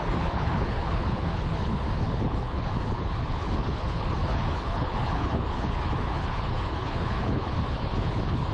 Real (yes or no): no